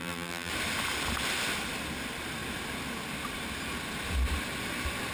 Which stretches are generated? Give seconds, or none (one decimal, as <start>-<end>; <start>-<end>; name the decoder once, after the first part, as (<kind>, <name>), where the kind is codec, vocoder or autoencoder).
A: 0.0-0.5 (vocoder, BigVGAN v2)